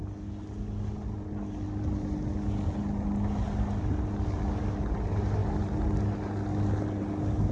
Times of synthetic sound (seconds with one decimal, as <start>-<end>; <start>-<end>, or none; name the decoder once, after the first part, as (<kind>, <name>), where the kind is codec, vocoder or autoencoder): none